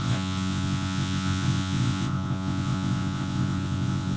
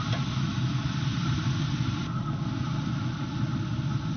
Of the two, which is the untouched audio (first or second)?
second